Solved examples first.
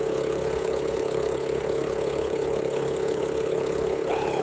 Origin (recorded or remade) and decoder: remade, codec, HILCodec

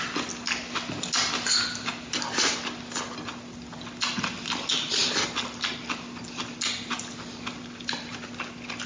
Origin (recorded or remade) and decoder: recorded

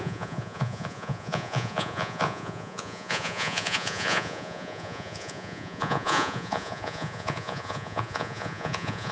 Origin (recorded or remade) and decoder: remade, vocoder, Vocos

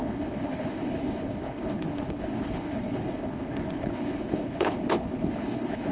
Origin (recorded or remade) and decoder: remade, codec, HILCodec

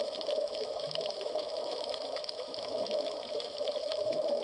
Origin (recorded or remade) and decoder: remade, autoencoder, DAC-VAE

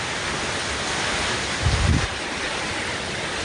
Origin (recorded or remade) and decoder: recorded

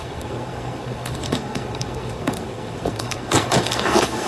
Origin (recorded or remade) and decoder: remade, codec, SNAC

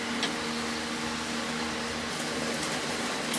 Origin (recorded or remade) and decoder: recorded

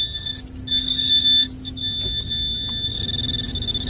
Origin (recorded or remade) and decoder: recorded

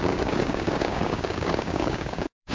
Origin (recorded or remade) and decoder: remade, codec, DAC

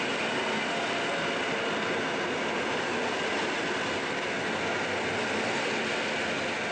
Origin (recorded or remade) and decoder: recorded